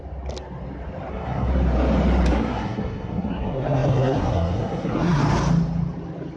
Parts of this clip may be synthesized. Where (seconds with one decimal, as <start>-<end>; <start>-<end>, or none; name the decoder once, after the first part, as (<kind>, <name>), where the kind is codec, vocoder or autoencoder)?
1.1-1.5 (codec, SNAC); 2.3-5.2

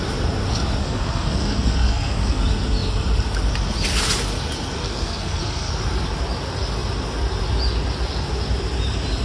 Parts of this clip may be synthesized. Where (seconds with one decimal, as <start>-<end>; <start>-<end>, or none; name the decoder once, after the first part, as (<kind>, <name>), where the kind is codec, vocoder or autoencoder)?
0.8-2.4 (codec, SNAC); 4.8-5.7

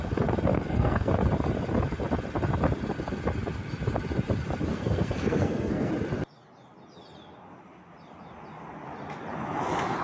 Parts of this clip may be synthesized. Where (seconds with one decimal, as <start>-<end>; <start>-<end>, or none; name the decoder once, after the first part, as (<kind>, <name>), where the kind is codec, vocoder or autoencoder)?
0.5-1.1 (codec, SNAC); 4.7-5.9

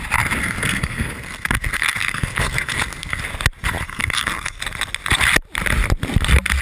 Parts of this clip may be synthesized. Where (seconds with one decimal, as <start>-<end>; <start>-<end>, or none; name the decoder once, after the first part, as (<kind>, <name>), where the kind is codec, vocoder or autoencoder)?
0.4-3.2 (codec, SNAC); 3.9-4.6

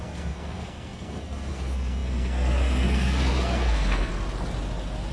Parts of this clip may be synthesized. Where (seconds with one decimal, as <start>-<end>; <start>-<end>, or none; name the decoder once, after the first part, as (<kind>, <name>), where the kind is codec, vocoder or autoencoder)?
0.0-4.1 (codec, SNAC)

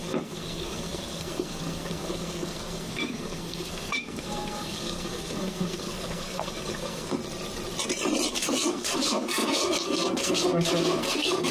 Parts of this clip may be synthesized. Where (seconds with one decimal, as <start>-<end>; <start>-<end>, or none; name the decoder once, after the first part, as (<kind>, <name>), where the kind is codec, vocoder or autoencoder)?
0.0-7.2 (codec, SNAC); 8.3-11.5